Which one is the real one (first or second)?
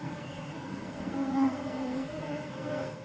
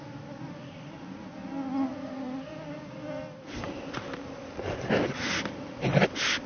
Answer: second